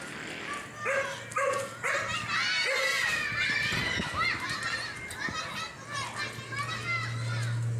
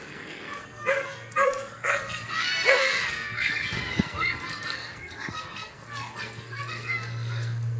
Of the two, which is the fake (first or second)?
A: second